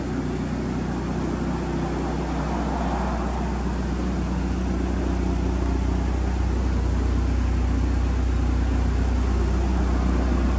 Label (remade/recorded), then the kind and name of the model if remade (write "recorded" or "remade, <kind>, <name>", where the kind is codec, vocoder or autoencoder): recorded